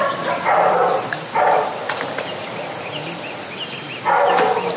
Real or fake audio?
real